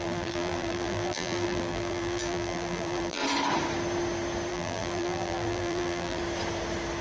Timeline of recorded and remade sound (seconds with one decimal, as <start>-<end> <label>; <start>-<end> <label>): 0.0-3.2 remade; 3.2-4.5 recorded; 4.5-6.2 remade; 6.2-7.0 recorded